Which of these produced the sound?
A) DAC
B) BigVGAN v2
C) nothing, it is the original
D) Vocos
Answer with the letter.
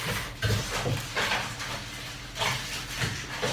C